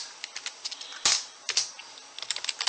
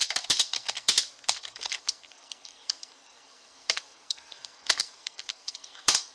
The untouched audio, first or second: first